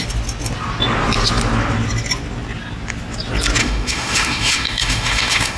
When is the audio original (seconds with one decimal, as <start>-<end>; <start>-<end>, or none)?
0.0-3.6